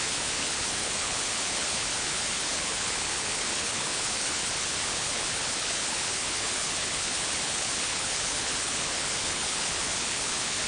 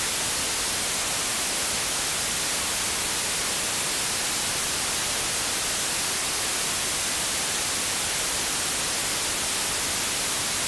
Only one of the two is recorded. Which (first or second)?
second